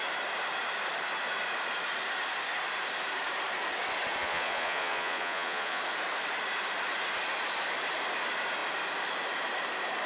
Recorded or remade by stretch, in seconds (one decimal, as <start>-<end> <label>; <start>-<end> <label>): 0.0-4.2 recorded; 4.2-5.8 remade; 5.8-10.1 recorded

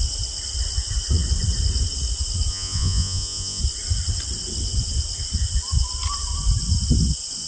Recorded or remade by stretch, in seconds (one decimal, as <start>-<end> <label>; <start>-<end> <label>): 0.0-2.5 recorded; 2.5-3.6 remade; 3.6-7.5 recorded

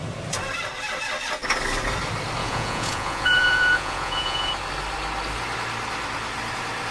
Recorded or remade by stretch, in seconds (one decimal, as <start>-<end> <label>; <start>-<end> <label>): 0.0-2.4 recorded; 2.4-4.5 remade; 4.5-6.9 recorded

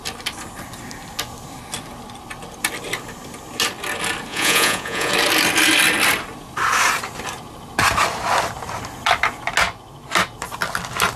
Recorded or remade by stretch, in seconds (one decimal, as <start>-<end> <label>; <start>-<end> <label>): 0.0-4.3 recorded; 4.3-5.1 remade; 5.1-11.2 recorded

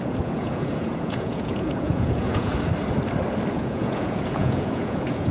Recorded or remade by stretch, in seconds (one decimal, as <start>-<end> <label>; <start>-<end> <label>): 0.0-2.5 remade; 2.5-3.5 recorded; 3.5-5.3 remade